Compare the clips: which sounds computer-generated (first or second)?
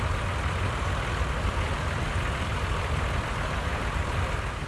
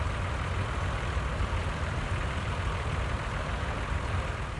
second